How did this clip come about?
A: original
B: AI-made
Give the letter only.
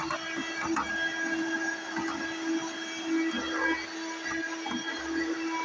A